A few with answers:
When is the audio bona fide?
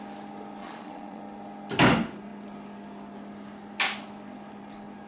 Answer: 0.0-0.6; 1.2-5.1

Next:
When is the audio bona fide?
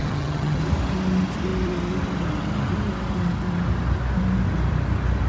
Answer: 0.6-5.3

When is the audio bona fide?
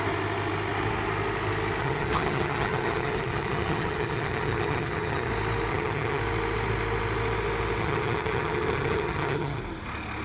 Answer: 0.0-1.8; 5.3-5.7; 6.2-7.8; 9.6-10.2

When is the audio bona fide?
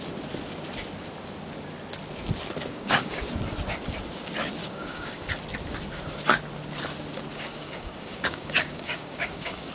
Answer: 0.0-2.7; 3.2-4.6; 5.2-7.3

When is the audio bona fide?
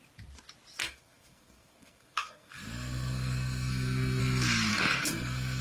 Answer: 0.0-0.8; 4.2-4.7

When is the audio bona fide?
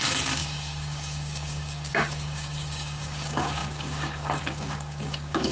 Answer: none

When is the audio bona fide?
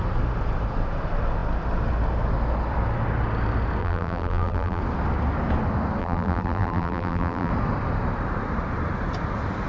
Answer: 0.0-3.8; 4.8-6.0; 7.5-9.7